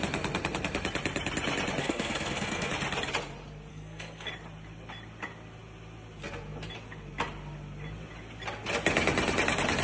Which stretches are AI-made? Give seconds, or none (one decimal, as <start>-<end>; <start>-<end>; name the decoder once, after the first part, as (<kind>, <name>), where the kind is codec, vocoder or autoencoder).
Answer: 1.8-2.7 (codec, SNAC); 3.7-4.3